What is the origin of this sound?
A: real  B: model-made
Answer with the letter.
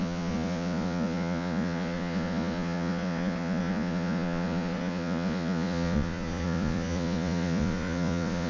B